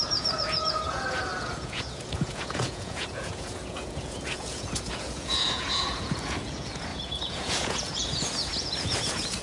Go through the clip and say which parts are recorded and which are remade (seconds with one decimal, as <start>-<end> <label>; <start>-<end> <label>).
0.0-9.4 remade